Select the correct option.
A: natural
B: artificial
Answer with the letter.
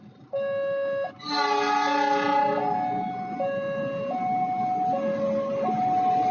A